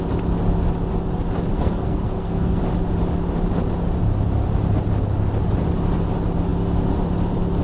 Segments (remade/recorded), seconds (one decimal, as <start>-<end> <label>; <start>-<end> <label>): 0.0-1.5 recorded; 1.5-2.6 remade; 2.6-7.6 recorded